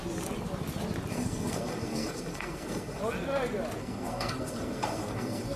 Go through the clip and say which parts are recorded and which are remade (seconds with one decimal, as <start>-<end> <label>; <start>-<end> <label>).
0.0-1.1 recorded; 1.1-3.0 remade; 3.0-3.8 recorded; 3.8-5.6 remade